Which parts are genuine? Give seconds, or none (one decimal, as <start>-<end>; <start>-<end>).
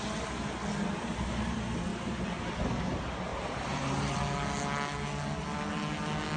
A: 0.0-1.9; 2.5-3.3; 4.2-6.4